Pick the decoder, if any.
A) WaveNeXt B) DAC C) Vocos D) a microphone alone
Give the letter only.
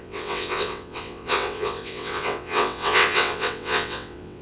A